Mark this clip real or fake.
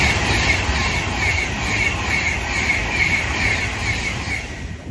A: real